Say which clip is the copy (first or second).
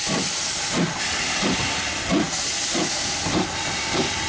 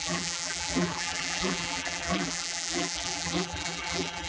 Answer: second